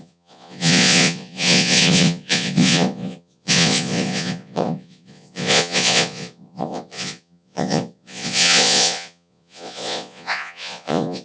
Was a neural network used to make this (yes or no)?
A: yes